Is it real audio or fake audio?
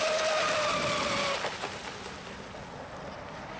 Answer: real